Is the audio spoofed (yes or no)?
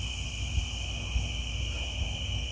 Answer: no